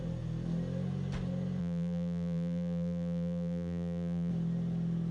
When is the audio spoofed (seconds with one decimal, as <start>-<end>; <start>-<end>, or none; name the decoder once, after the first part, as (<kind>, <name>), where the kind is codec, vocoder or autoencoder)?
1.6-4.3 (vocoder, BigVGAN v2)